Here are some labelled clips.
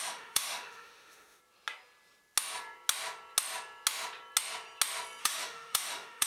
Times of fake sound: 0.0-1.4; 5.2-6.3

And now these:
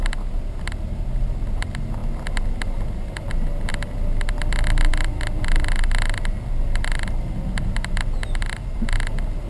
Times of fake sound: none

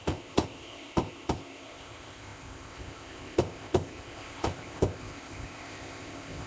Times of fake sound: 0.0-6.5

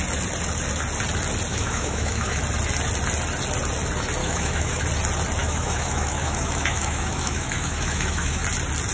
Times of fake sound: 1.5-2.4; 4.2-4.8; 5.4-8.4

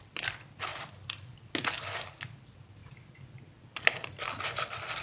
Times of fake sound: none

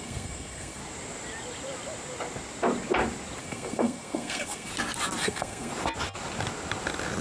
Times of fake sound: 0.0-0.8; 3.4-4.7; 5.2-5.7

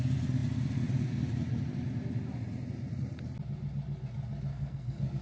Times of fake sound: 4.5-5.2

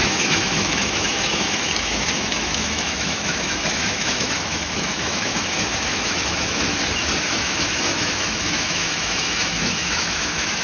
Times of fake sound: 0.0-6.6; 7.2-10.6